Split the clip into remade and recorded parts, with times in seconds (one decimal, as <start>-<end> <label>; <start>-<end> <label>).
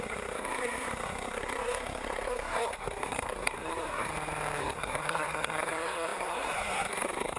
0.0-4.1 remade; 4.1-4.6 recorded; 4.6-7.4 remade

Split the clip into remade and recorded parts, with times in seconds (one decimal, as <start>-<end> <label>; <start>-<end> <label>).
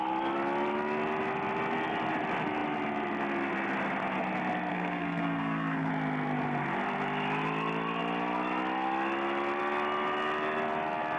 0.0-4.7 recorded; 4.7-5.9 remade; 5.9-11.2 recorded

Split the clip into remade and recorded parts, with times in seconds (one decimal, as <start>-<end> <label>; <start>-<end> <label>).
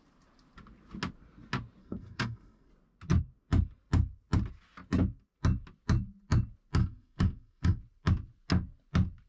0.0-1.8 recorded; 1.8-2.7 remade; 2.7-6.8 recorded; 6.8-7.8 remade; 7.8-9.3 recorded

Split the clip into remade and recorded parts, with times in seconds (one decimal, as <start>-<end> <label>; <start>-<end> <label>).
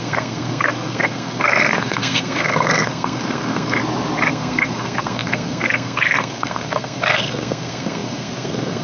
0.0-3.8 remade; 3.8-4.3 recorded; 4.3-8.8 remade